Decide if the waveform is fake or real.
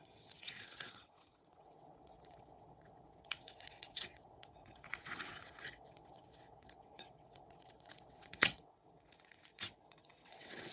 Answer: fake